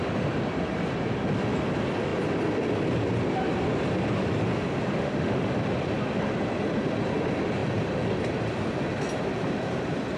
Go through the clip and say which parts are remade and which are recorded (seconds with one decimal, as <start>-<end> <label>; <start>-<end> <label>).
0.0-5.0 recorded; 5.0-5.5 remade; 5.5-10.2 recorded